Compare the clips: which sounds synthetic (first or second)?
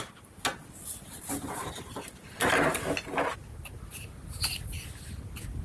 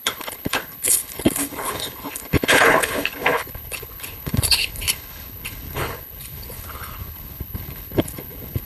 second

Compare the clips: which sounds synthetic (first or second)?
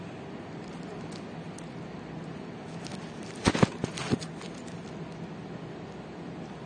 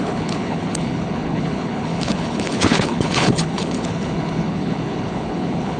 second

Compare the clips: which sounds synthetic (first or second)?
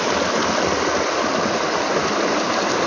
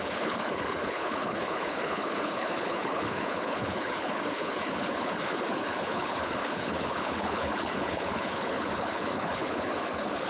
second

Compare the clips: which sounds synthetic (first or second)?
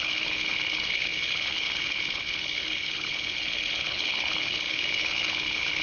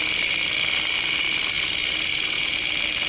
first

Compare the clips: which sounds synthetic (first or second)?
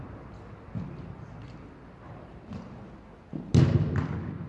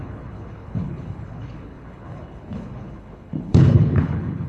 second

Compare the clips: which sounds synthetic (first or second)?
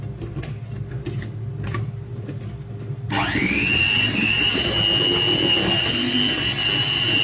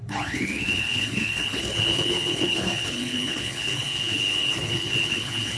second